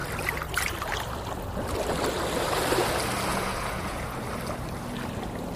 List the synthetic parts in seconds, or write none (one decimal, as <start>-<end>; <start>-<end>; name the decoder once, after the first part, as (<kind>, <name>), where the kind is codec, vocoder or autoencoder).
3.3-4.2 (vocoder, Vocos)